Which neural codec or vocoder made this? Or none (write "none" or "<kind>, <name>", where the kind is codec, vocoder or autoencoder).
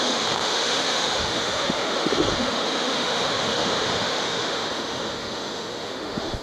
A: autoencoder, DAC-VAE